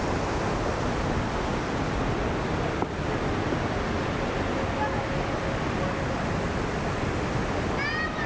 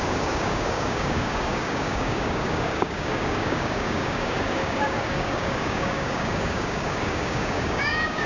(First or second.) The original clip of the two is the first